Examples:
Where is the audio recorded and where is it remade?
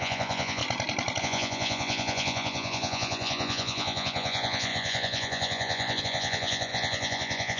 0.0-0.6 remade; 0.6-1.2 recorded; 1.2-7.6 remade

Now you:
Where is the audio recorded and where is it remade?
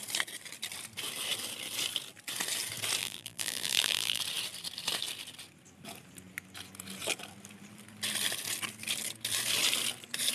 0.0-3.0 recorded; 3.0-4.2 remade; 4.2-10.3 recorded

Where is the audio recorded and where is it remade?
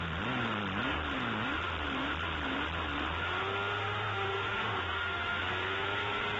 0.0-3.8 recorded; 3.8-5.4 remade; 5.4-6.4 recorded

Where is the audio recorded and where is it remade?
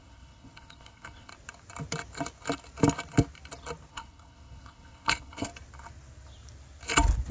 0.0-1.3 remade; 1.3-3.9 recorded; 3.9-5.5 remade; 5.5-7.3 recorded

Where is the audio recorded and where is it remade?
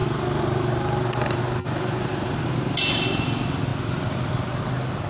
0.0-5.1 recorded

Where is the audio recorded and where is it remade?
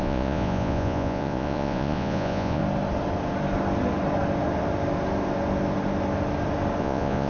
0.0-2.6 remade; 2.6-6.8 recorded; 6.8-7.3 remade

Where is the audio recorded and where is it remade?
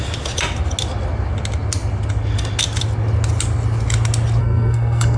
0.0-4.4 recorded; 4.4-5.2 remade